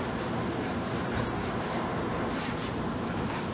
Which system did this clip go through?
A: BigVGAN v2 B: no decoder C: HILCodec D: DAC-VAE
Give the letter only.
A